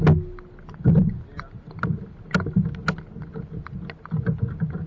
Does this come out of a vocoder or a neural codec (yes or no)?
no